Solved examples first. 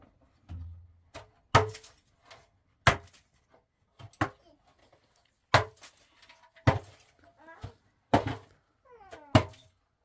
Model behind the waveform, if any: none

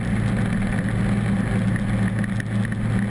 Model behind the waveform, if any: none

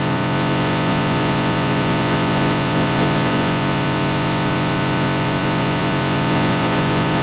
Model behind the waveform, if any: vocoder, Vocos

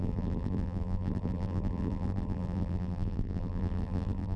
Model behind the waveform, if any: vocoder, BigVGAN v2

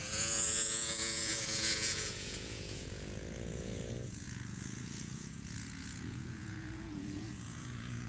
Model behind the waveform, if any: vocoder, Vocos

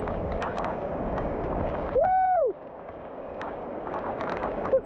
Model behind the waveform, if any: codec, DAC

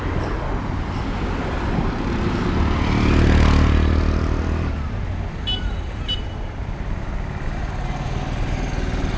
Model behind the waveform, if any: none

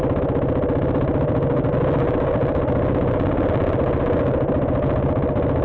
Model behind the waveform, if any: none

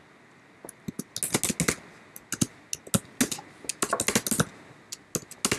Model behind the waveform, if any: none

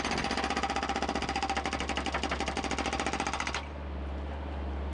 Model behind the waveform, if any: none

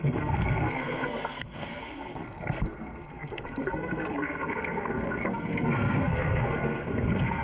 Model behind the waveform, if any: codec, SNAC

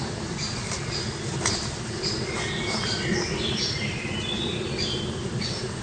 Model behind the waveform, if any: none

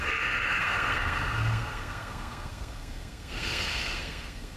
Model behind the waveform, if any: codec, SNAC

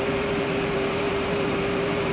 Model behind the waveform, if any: vocoder, BigVGAN v2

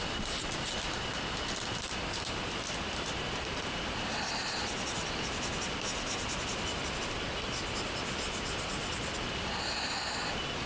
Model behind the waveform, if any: none